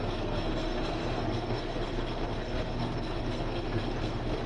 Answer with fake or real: fake